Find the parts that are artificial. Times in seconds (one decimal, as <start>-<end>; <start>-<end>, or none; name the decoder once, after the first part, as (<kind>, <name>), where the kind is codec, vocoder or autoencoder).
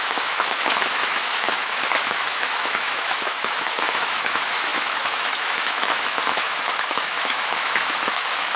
0.0-8.6 (autoencoder, DAC-VAE)